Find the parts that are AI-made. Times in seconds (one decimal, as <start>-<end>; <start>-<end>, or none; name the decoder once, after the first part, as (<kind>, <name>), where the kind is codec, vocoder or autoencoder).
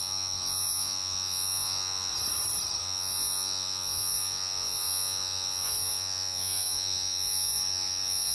0.0-2.1 (vocoder, Vocos); 2.8-8.3